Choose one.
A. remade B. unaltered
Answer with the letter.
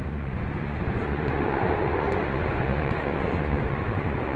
A